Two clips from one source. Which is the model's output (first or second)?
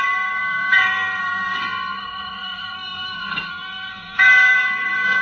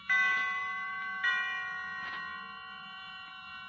first